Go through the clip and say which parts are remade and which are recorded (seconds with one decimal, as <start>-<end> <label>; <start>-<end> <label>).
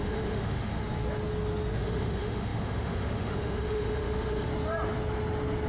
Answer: 0.0-0.8 remade; 0.8-1.7 recorded; 1.7-4.5 remade; 4.5-5.7 recorded